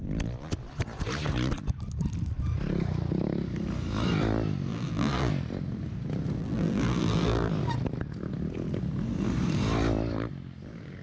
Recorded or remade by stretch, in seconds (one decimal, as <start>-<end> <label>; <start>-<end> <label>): 0.0-4.7 recorded; 4.7-5.3 remade; 5.3-6.4 recorded; 6.4-7.5 remade; 7.5-11.0 recorded